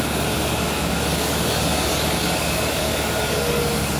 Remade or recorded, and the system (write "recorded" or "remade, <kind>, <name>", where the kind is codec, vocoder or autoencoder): remade, codec, DAC